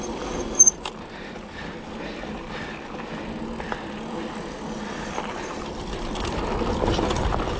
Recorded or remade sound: recorded